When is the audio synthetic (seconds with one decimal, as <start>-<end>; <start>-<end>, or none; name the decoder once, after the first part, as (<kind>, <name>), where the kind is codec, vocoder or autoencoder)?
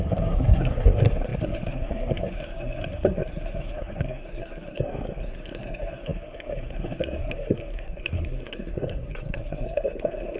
0.0-10.4 (codec, SNAC)